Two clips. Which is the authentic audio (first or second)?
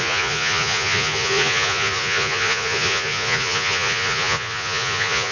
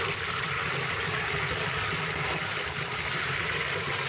second